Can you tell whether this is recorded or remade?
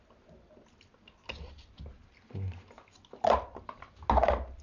recorded